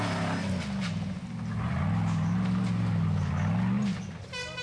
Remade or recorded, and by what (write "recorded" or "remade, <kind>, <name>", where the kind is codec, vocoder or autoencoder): recorded